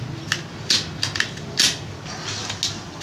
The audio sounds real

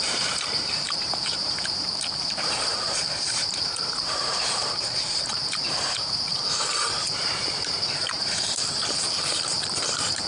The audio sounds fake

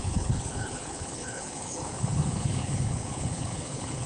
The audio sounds fake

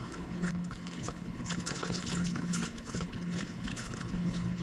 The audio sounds fake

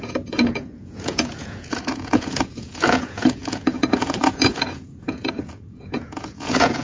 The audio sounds fake